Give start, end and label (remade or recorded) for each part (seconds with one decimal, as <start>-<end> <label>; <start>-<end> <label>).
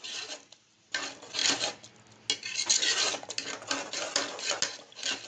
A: 0.0-5.3 recorded